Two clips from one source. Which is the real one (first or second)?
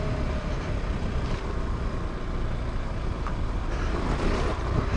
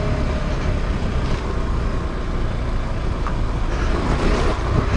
second